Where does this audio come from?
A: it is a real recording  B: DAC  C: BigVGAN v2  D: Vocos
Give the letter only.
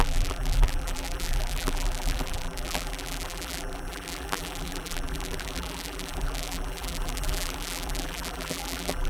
C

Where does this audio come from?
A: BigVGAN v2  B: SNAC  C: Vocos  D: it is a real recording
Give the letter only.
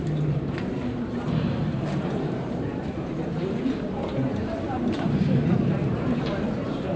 A